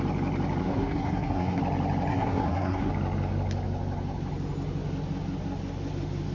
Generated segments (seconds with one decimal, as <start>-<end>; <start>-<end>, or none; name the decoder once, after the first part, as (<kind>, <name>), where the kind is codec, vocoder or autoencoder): 0.6-1.6 (codec, SNAC); 2.1-2.9